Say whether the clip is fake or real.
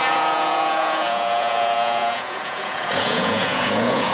fake